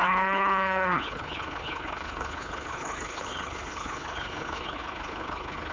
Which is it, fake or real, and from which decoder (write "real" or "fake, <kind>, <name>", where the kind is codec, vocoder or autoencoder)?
fake, codec, HILCodec